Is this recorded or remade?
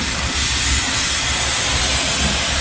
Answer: recorded